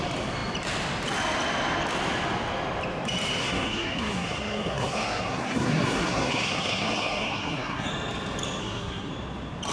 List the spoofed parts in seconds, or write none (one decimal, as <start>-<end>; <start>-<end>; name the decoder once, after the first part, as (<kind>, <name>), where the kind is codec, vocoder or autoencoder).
3.4-7.9 (codec, SNAC); 8.6-9.1